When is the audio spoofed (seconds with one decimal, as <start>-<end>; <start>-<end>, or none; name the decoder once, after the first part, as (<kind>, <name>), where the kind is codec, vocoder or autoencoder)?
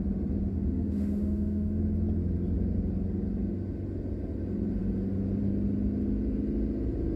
0.5-1.8 (autoencoder, DAC-VAE)